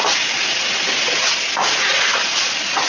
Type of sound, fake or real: real